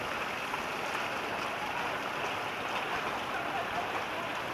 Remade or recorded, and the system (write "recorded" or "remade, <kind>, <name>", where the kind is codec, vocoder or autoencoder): recorded